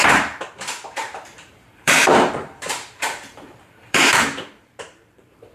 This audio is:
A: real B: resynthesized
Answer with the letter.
B